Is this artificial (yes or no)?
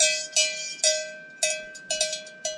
no